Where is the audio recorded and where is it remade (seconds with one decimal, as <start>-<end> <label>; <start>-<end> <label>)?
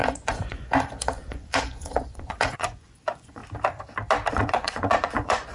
0.0-3.4 remade; 3.4-4.3 recorded; 4.3-5.5 remade